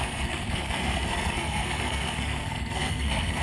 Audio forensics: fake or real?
fake